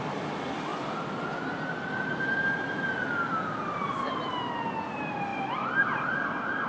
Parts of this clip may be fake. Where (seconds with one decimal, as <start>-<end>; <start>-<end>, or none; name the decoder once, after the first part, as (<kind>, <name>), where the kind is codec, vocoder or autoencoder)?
none